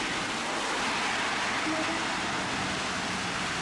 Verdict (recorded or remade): recorded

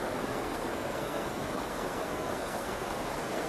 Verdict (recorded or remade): remade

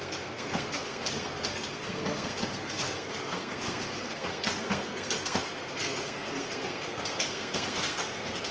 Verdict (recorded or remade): remade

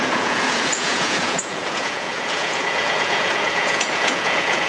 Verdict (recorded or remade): remade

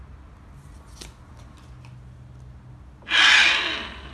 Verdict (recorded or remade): recorded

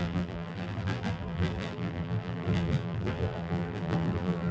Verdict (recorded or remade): remade